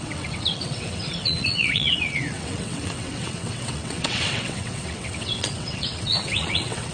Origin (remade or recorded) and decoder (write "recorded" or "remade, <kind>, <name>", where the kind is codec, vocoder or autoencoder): remade, vocoder, WaveNeXt